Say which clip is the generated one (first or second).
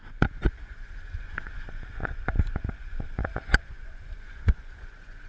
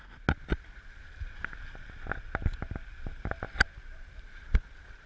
first